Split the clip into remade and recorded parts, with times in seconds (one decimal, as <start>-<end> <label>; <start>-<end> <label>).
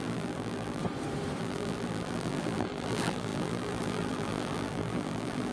0.0-0.8 remade; 0.8-1.4 recorded; 1.4-5.5 remade